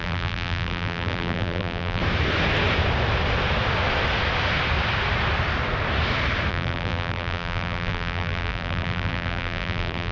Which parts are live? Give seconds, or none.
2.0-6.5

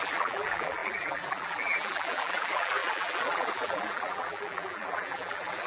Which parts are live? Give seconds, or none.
none

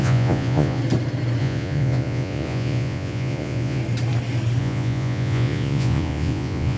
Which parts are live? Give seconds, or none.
0.8-1.4; 3.8-4.6